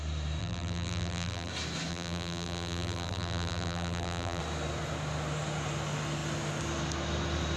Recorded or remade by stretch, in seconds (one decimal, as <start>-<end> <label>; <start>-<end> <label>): 0.0-0.4 recorded; 0.4-1.5 remade; 1.5-1.9 recorded; 1.9-4.4 remade; 4.4-7.6 recorded